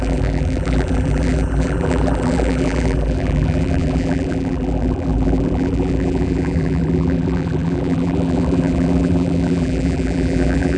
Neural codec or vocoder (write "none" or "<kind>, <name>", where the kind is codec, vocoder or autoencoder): vocoder, BigVGAN v2